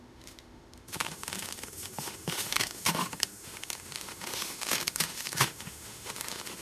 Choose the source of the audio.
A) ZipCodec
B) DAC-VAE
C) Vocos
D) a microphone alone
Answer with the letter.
B